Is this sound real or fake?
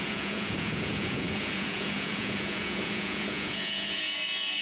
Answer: fake